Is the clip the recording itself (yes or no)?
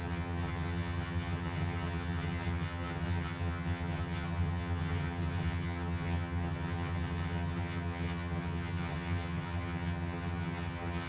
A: no